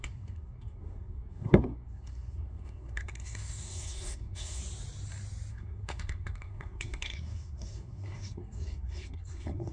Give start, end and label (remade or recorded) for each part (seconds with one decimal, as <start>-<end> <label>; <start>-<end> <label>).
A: 0.0-4.6 remade; 4.6-5.5 recorded; 5.5-9.7 remade